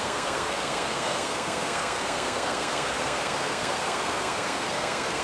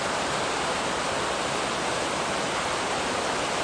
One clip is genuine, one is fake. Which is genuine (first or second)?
second